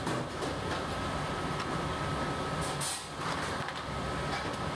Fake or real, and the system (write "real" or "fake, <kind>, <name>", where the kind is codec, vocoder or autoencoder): real